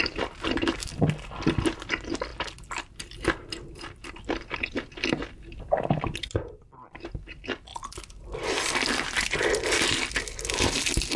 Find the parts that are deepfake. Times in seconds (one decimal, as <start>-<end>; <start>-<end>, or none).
none